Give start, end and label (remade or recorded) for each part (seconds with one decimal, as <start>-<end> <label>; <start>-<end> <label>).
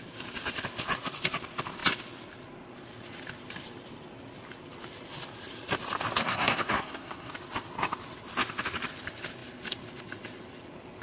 0.0-6.2 recorded; 6.2-7.3 remade; 7.3-11.0 recorded